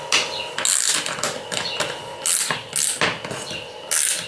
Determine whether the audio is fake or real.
real